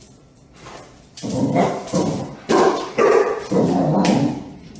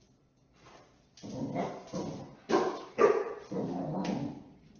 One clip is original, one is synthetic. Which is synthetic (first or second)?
first